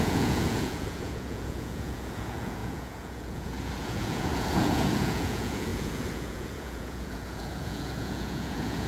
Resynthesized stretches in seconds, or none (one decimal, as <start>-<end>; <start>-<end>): 0.0-8.9